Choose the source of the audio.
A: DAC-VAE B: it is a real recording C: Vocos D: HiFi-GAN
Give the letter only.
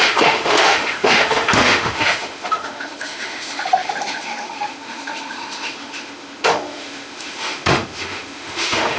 A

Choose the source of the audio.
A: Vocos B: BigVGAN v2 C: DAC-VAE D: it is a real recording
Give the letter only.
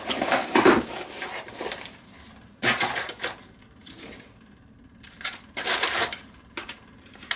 B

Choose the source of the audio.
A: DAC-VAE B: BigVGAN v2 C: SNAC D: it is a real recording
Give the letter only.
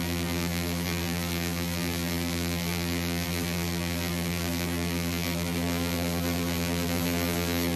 B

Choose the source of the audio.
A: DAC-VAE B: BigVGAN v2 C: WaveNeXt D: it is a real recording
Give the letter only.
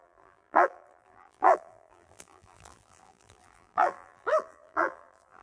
B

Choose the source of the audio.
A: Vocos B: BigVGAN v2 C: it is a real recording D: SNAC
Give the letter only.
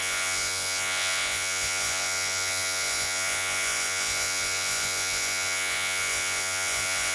A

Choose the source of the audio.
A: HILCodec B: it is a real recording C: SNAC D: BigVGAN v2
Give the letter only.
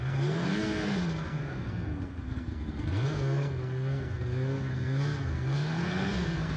C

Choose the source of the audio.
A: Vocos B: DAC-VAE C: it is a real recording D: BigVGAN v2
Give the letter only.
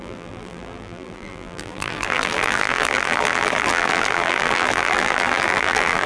D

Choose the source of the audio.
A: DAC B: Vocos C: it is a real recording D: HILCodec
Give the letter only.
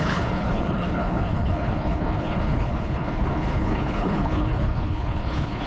D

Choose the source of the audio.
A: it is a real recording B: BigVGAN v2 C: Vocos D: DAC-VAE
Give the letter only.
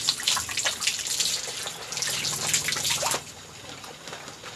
A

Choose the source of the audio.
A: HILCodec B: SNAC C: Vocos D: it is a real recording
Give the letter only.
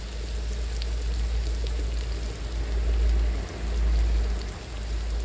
D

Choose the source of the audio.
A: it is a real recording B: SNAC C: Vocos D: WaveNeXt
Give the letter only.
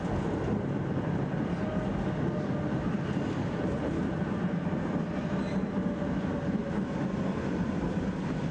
A